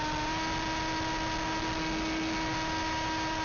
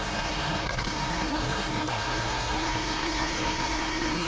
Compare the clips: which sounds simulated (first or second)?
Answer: second